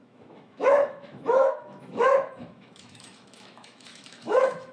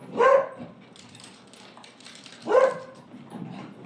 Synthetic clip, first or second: first